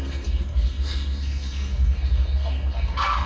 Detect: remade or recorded remade